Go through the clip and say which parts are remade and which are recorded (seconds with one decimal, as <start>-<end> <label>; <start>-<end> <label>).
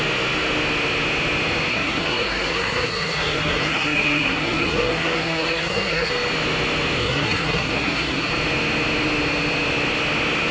0.0-1.7 recorded; 1.7-6.1 remade; 6.1-7.0 recorded; 7.0-8.3 remade; 8.3-10.5 recorded